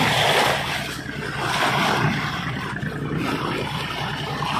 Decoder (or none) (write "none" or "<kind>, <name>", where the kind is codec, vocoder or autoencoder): none